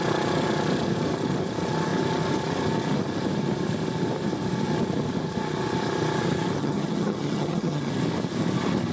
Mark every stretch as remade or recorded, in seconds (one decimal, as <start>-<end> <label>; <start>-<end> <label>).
0.0-6.6 recorded; 6.6-7.9 remade; 7.9-8.9 recorded